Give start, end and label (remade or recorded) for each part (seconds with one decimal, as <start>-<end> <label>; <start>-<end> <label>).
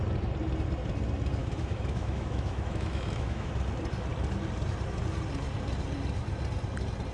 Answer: 0.0-1.4 recorded; 1.4-3.5 remade; 3.5-7.1 recorded